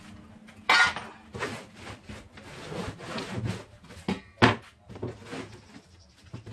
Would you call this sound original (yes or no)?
yes